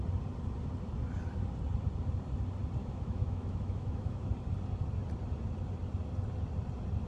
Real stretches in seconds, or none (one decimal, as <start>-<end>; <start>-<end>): 0.0-2.8; 4.3-7.1